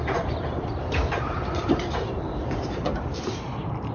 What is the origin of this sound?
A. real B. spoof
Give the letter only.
B